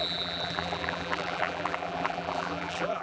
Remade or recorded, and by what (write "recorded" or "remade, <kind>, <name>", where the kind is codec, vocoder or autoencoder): remade, vocoder, BigVGAN v2